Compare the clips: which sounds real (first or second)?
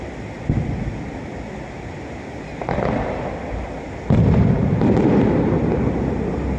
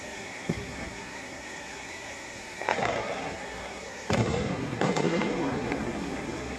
first